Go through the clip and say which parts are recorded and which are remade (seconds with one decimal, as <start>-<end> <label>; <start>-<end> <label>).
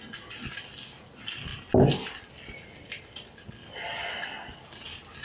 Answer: 0.0-5.2 recorded